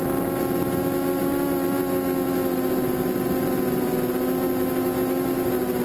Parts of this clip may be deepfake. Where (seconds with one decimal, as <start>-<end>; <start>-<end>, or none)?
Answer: none